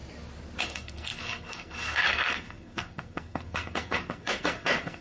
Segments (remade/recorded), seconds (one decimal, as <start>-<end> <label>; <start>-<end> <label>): 0.0-0.6 recorded; 0.6-5.0 remade

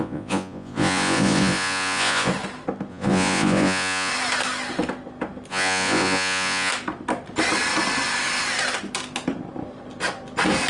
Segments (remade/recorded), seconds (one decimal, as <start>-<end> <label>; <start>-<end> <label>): 0.0-2.3 remade; 2.3-2.9 recorded; 2.9-4.1 remade; 4.1-5.5 recorded; 5.5-6.7 remade; 6.7-10.7 recorded

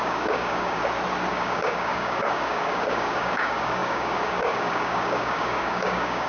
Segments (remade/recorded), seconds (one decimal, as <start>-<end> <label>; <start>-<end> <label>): 0.0-0.8 remade; 0.8-1.3 recorded; 1.3-6.3 remade

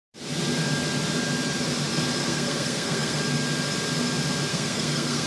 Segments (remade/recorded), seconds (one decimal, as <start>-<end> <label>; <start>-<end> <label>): 0.0-2.2 recorded; 2.2-3.2 remade; 3.2-4.5 recorded; 4.5-5.3 remade